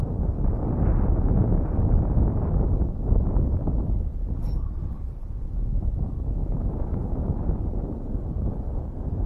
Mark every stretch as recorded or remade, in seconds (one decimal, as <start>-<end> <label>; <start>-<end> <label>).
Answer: 0.0-6.4 recorded; 6.4-7.4 remade; 7.4-9.3 recorded